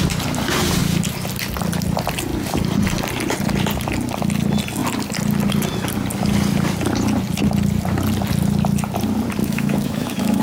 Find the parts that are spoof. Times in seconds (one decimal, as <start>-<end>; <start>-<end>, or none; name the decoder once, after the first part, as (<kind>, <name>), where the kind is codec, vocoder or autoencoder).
9.4-10.4 (autoencoder, DAC-VAE)